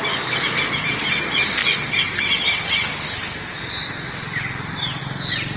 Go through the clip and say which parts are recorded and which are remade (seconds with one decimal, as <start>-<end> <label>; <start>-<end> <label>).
0.0-1.6 remade; 1.6-5.0 recorded; 5.0-5.6 remade